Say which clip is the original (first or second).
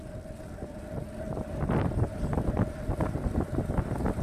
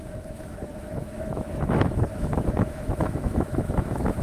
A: first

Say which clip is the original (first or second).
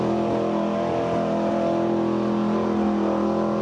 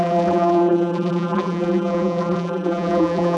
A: first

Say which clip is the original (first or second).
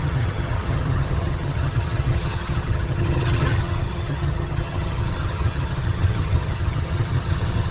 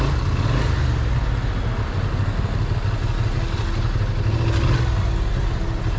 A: second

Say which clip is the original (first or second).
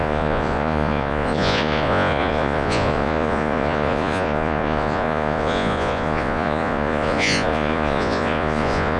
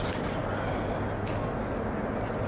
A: second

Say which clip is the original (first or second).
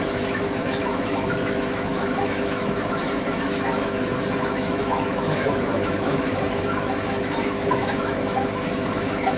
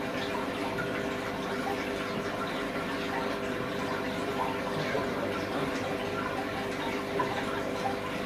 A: second